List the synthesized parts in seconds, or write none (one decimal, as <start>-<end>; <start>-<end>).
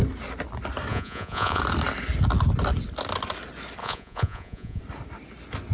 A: 0.9-1.6; 3.8-4.8